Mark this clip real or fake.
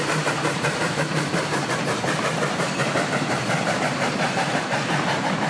fake